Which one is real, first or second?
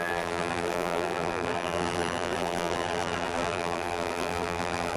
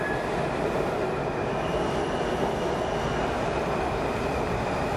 second